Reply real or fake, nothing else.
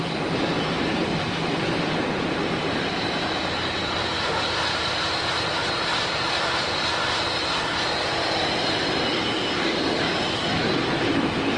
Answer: fake